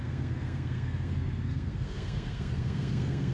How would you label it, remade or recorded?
remade